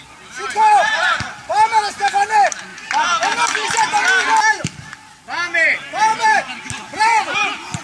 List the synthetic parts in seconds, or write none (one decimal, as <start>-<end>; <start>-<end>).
2.7-3.7; 6.1-6.8